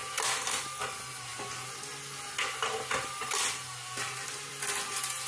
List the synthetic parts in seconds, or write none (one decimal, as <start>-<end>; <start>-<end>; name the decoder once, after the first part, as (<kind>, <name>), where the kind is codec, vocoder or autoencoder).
none